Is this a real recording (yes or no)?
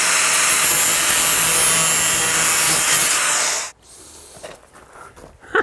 yes